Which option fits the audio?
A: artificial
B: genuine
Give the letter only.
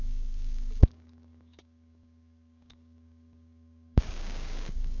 A